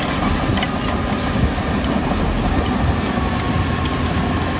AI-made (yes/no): no